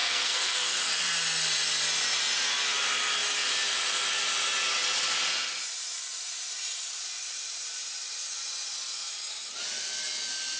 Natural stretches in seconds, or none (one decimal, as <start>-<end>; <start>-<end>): 0.8-10.6